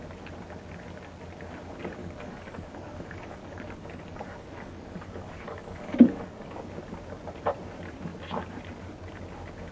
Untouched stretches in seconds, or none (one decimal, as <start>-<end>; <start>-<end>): 0.0-2.0; 6.7-9.7